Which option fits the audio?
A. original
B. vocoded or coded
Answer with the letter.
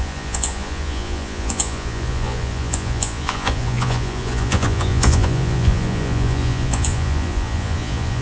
B